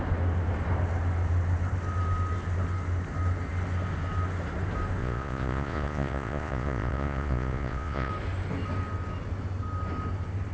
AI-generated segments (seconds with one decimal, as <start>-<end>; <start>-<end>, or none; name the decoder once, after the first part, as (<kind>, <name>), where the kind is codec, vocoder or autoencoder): 5.0-8.1 (vocoder, Vocos)